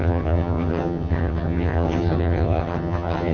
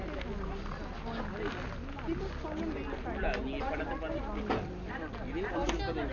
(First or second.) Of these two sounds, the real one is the second